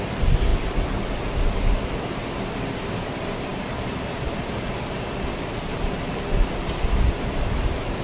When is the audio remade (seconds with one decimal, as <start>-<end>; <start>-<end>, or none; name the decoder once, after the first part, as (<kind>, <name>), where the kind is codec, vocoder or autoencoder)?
3.5-4.8 (vocoder, BigVGAN v2)